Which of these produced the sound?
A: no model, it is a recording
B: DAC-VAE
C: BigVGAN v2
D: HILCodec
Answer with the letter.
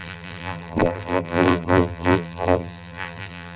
C